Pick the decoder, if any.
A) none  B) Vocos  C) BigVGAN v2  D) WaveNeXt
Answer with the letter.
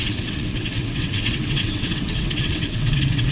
D